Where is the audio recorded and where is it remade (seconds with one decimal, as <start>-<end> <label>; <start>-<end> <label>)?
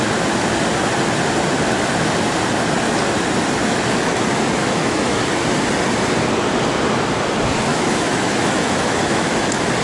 0.0-4.6 recorded; 4.6-5.2 remade; 5.2-7.7 recorded; 7.7-9.4 remade; 9.4-9.8 recorded